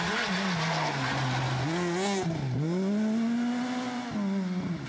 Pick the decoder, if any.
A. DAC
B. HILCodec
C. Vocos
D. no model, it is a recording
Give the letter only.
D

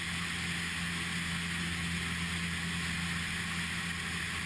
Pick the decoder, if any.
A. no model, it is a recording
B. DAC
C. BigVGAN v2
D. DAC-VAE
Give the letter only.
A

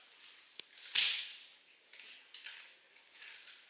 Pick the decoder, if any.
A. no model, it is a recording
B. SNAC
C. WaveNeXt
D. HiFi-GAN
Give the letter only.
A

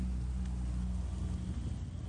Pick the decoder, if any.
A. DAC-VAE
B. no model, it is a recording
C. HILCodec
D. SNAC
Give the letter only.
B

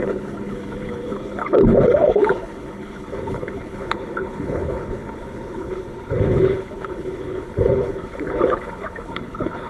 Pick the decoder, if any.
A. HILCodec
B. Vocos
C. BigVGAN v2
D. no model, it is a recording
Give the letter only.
A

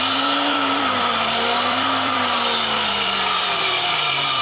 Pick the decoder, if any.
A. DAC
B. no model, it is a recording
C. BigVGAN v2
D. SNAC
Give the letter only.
C